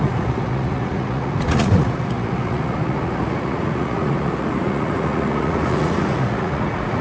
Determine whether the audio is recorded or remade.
remade